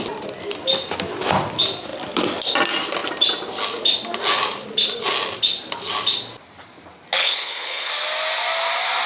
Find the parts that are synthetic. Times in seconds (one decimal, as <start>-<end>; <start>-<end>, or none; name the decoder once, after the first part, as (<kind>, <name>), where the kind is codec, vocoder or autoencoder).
7.2-7.9 (codec, HILCodec)

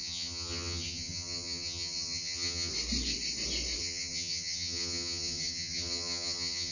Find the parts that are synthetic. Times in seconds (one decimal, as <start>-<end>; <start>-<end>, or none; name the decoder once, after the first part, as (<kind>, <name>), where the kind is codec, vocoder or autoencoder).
0.0-2.7 (vocoder, HiFi-GAN); 3.8-6.7

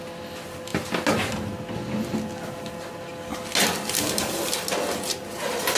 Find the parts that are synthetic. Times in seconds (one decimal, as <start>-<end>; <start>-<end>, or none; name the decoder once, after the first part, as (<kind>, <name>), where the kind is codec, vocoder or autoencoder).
none

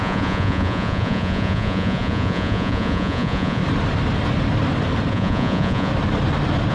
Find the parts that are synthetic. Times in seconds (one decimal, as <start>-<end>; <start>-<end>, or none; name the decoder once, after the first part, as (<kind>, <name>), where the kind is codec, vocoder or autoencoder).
0.0-3.6 (vocoder, Vocos); 5.1-5.9